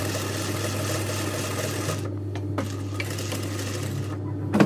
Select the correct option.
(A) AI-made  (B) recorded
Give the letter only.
B